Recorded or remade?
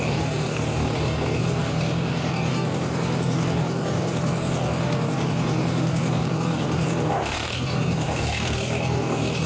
remade